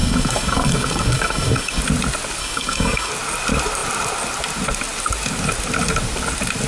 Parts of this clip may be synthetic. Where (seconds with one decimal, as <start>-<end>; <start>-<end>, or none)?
0.0-1.8; 2.4-3.1